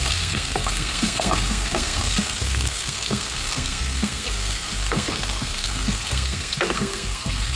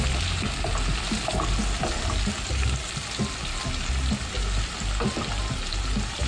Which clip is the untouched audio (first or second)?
second